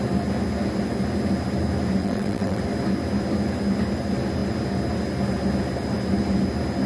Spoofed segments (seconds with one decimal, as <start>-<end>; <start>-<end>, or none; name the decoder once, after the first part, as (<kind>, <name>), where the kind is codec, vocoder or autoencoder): 2.0-2.6 (vocoder, WaveNeXt)